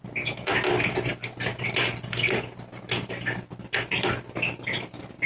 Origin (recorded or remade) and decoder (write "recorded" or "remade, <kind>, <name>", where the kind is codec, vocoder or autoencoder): recorded